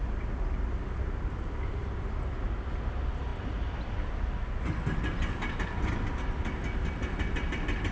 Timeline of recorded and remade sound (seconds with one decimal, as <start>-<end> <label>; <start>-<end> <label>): 0.0-7.9 recorded